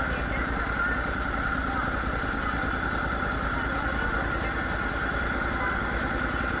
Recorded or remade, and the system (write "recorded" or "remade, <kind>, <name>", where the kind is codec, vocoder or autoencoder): recorded